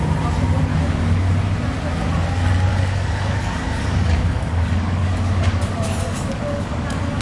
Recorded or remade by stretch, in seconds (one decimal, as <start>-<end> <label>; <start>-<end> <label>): 0.0-0.7 recorded; 0.7-1.3 remade; 1.3-2.7 recorded; 2.7-7.2 remade